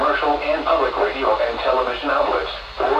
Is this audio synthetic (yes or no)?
no